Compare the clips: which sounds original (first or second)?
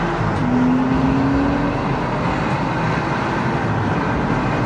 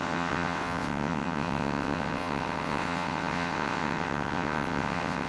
first